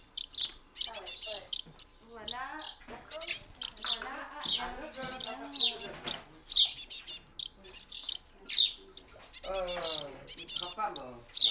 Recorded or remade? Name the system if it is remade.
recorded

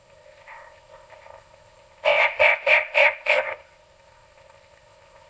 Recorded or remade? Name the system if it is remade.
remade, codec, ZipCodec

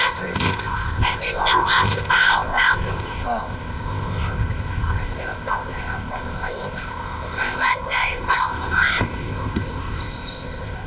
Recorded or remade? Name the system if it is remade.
remade, codec, ZipCodec